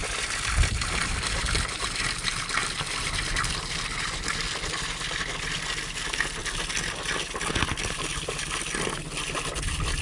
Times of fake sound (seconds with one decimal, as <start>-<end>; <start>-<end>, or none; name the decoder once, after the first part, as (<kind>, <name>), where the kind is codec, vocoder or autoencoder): none